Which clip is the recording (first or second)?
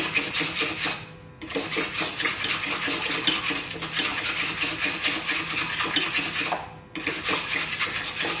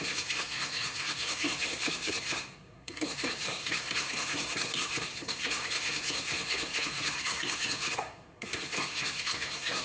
first